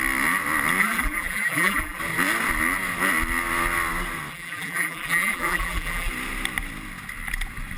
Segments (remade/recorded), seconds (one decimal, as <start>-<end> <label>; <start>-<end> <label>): 0.0-0.8 recorded; 0.8-2.0 remade; 2.0-4.3 recorded; 4.3-6.1 remade; 6.1-7.8 recorded